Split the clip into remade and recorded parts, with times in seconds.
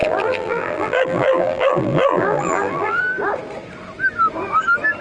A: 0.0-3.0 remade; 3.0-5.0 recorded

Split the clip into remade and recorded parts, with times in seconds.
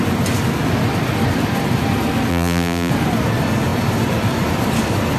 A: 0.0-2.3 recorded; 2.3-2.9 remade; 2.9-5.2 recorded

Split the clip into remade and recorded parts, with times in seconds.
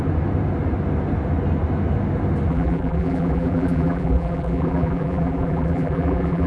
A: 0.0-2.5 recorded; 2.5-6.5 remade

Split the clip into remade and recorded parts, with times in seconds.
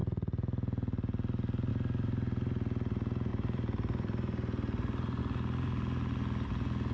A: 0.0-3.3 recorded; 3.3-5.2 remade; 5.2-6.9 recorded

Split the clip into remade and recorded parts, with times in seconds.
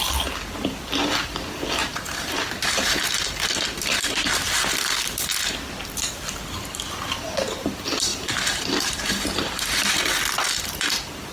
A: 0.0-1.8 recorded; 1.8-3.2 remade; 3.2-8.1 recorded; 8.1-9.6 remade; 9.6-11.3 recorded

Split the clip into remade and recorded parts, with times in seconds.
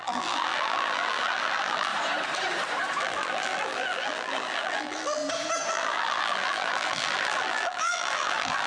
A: 0.0-1.9 remade; 1.9-3.0 recorded; 3.0-5.2 remade; 5.2-5.7 recorded; 5.7-8.7 remade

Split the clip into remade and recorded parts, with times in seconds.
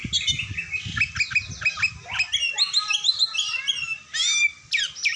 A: 0.0-5.2 recorded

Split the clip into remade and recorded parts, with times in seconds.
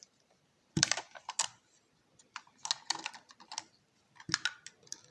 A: 0.0-1.4 remade; 1.4-5.1 recorded